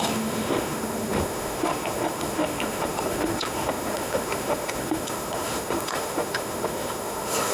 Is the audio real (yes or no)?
no